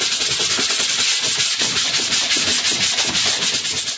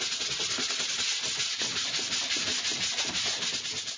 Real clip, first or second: second